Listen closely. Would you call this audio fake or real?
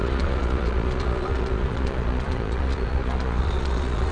fake